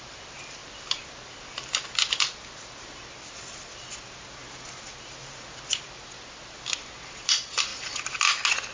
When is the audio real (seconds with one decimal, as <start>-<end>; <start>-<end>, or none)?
0.0-8.7